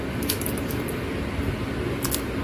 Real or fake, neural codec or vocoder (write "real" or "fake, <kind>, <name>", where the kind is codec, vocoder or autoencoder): real